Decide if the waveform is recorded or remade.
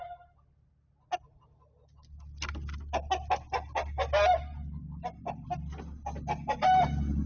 recorded